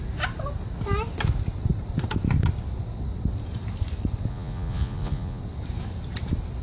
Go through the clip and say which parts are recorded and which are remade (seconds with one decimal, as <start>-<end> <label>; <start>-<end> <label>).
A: 0.0-4.3 recorded; 4.3-5.4 remade; 5.4-6.6 recorded